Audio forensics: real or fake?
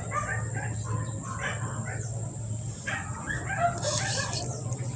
real